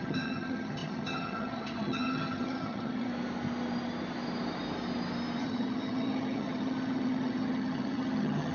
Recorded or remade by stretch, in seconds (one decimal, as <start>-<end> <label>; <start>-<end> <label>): 0.0-3.1 remade; 3.1-5.4 recorded; 5.4-8.5 remade